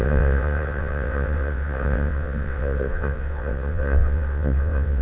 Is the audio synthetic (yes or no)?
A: yes